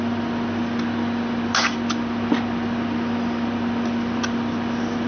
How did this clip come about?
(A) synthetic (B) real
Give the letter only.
B